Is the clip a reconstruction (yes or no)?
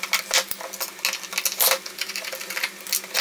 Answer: no